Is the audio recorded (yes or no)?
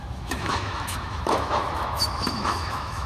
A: no